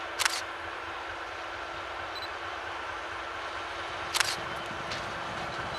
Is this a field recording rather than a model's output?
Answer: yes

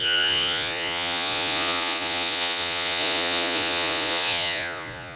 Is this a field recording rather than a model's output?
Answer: no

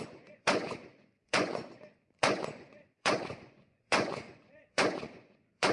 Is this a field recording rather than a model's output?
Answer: no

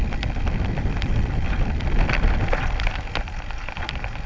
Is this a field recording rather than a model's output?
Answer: yes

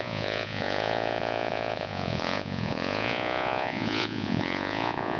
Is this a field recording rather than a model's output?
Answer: no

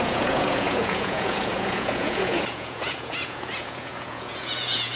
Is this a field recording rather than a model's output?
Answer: no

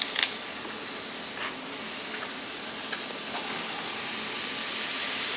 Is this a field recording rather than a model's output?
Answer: yes